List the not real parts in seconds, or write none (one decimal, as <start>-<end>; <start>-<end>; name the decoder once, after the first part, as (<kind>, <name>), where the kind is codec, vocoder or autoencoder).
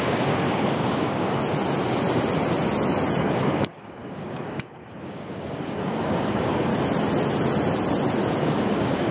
0.0-1.4 (codec, DAC); 3.2-6.7; 8.4-9.1